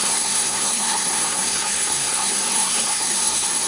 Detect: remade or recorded remade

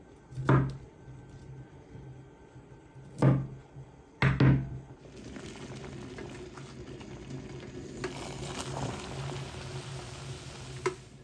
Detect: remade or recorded recorded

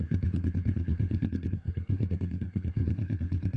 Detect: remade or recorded remade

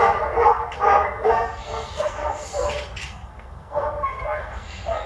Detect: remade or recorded remade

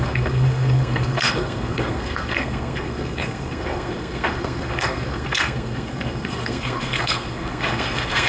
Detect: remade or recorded remade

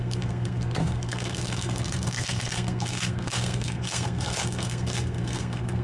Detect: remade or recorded remade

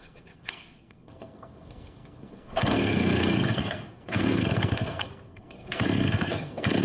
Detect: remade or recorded remade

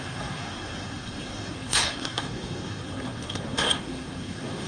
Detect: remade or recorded remade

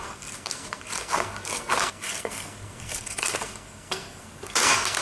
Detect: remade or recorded remade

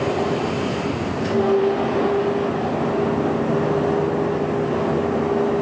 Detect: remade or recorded recorded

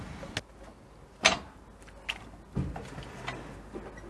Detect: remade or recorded recorded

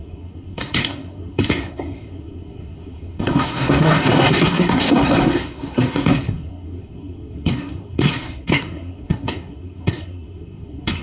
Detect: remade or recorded remade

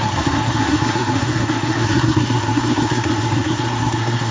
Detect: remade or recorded remade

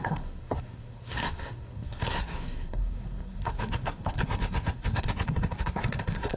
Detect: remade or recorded remade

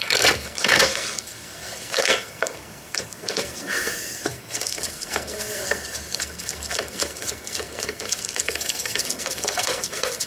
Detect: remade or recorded remade